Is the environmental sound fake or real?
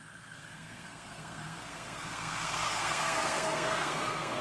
fake